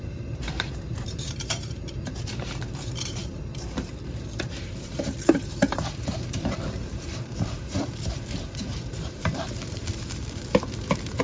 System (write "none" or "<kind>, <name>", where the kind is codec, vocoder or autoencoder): vocoder, BigVGAN v2